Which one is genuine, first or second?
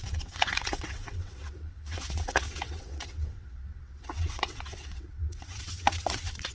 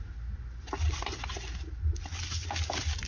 second